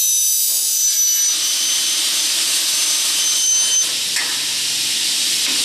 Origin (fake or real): real